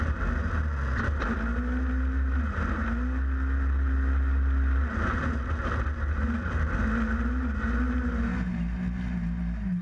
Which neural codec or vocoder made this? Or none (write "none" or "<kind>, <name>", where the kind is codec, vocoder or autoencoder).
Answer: none